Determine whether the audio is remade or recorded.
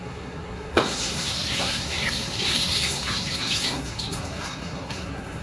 remade